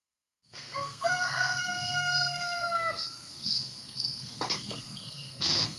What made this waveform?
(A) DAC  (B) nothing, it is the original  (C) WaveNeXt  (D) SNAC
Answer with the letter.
D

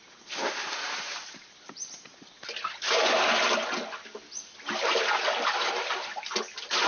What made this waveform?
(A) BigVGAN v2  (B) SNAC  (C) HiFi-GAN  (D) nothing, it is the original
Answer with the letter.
D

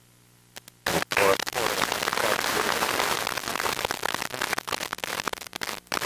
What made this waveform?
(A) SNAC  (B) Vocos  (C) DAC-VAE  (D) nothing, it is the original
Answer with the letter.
D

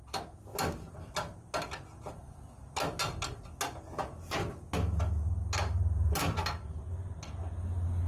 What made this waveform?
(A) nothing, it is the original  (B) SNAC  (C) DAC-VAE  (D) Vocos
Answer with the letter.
A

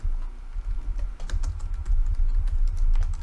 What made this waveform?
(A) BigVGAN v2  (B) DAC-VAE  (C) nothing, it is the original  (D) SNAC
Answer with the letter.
C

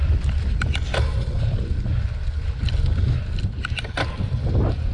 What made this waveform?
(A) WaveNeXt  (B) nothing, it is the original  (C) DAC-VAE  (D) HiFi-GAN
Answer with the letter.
B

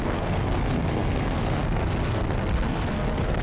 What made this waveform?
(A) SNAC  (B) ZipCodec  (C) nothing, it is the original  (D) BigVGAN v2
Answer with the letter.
A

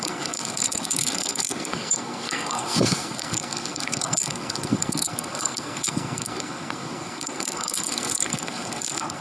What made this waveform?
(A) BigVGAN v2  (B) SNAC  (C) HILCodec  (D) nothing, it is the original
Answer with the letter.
B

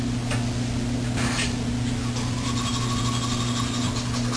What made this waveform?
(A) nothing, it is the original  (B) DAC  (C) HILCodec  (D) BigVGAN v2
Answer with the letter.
A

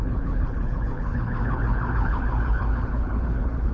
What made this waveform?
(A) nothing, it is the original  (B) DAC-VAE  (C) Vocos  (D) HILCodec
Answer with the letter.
D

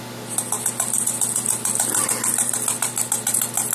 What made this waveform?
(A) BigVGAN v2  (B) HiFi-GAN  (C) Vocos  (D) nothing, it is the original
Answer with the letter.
D